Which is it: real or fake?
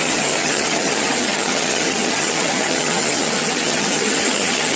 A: fake